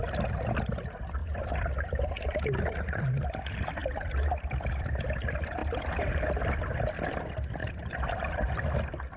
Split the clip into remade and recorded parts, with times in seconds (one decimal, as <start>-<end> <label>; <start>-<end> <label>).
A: 0.0-1.2 recorded; 1.2-3.0 remade; 3.0-3.8 recorded; 3.8-4.9 remade; 4.9-5.6 recorded; 5.6-6.6 remade; 6.6-7.6 recorded; 7.6-8.7 remade; 8.7-9.2 recorded